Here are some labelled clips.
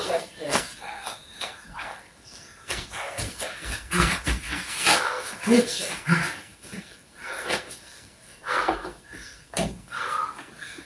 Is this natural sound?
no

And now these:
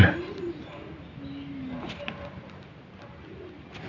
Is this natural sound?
yes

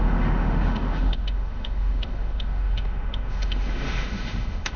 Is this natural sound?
no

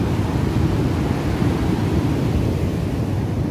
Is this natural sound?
yes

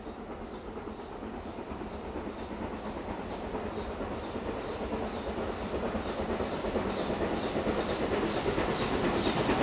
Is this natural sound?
yes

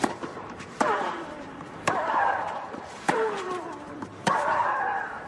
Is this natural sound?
no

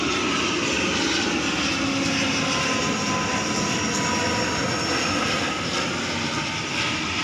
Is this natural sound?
yes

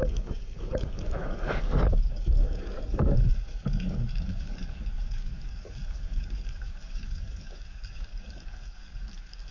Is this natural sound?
no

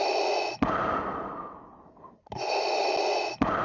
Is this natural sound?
yes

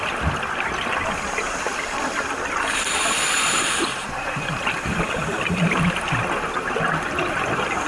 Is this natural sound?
yes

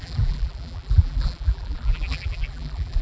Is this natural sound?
no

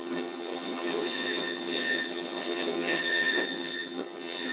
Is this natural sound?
no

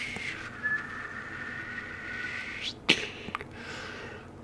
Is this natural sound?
yes